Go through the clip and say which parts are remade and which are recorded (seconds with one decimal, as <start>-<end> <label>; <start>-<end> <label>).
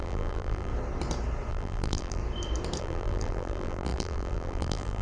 0.0-0.7 remade; 0.7-1.5 recorded; 1.5-2.2 remade; 2.2-2.8 recorded; 2.8-5.0 remade